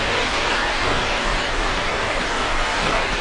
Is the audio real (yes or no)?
no